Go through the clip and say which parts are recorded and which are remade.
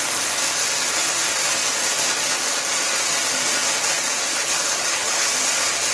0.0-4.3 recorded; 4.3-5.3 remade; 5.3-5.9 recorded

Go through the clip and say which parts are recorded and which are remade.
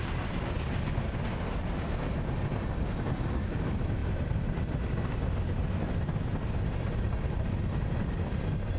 0.0-8.8 recorded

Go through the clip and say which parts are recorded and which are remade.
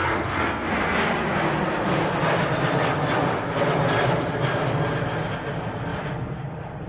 0.0-0.7 remade; 0.7-6.9 recorded